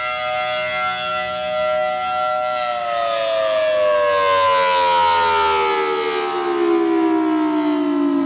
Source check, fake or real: real